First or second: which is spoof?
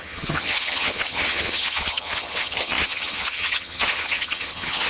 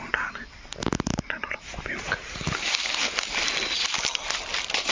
first